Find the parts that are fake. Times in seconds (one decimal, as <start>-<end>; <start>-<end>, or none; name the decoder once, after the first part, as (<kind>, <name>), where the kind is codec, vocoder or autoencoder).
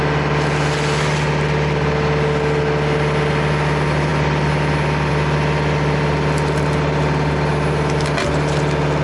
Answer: none